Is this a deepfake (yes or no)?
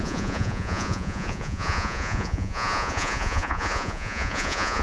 yes